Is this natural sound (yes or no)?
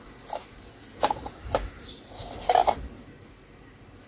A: yes